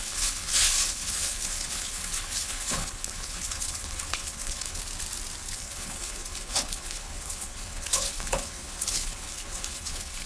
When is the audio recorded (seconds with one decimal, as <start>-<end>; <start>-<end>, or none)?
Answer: 4.8-5.5